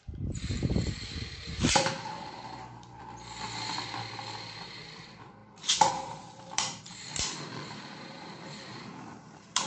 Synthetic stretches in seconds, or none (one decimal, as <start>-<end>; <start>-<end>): 0.0-3.0; 5.0-5.4; 5.9-9.7